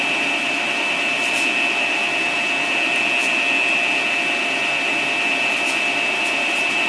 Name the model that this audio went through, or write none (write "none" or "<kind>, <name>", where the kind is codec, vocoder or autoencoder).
none